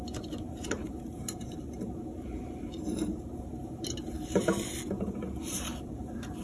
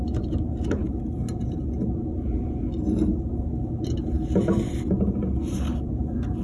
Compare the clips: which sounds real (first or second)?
second